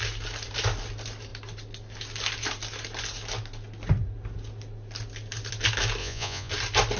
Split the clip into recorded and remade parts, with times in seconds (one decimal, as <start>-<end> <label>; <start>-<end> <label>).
0.0-6.0 recorded; 6.0-6.5 remade; 6.5-7.0 recorded

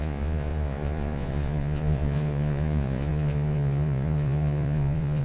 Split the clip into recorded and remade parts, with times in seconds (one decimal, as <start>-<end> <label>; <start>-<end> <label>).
0.0-5.2 remade

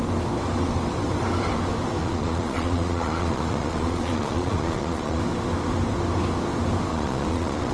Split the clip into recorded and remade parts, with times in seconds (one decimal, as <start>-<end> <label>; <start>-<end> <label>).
0.0-2.0 recorded; 2.0-5.2 remade; 5.2-6.9 recorded; 6.9-7.7 remade

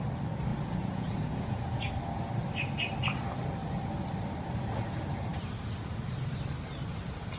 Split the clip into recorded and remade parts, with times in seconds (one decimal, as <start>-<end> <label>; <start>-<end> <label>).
0.0-0.5 recorded; 0.5-1.9 remade; 1.9-7.4 recorded